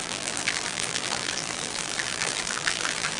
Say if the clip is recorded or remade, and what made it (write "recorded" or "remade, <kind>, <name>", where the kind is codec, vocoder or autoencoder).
remade, vocoder, BigVGAN v2